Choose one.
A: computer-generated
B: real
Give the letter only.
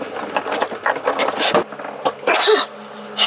B